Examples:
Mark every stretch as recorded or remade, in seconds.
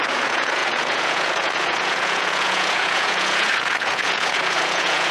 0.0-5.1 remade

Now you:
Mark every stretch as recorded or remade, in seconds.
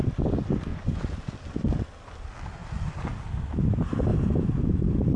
0.0-0.7 recorded; 0.7-1.3 remade; 1.3-5.2 recorded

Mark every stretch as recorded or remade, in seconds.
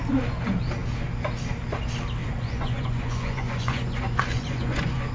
0.0-2.2 recorded; 2.2-5.1 remade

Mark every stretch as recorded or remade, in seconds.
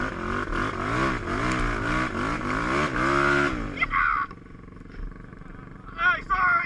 0.0-6.7 recorded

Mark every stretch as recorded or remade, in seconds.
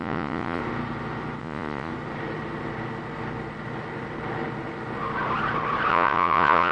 0.0-0.6 remade; 0.6-1.4 recorded; 1.4-1.9 remade; 1.9-5.9 recorded; 5.9-6.7 remade